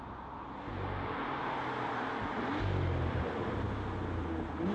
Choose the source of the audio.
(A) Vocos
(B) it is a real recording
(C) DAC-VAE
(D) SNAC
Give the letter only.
B